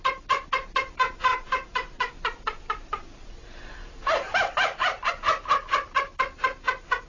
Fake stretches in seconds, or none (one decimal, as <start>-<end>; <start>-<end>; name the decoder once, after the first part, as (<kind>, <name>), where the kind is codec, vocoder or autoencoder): 1.3-5.1 (vocoder, BigVGAN v2)